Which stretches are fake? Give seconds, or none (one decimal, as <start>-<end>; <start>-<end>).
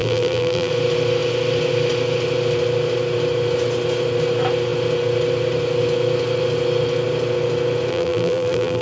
0.0-0.7; 7.9-8.8